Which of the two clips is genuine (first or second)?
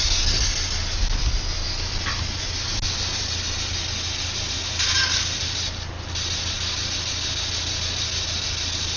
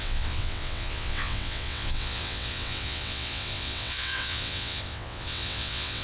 first